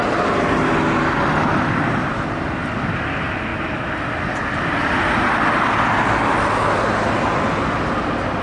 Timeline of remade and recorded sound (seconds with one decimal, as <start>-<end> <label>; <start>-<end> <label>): 0.0-8.4 recorded